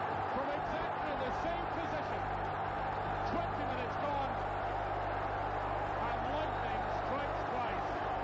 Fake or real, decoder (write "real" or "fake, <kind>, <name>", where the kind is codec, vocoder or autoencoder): real